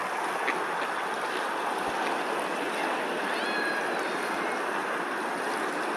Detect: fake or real real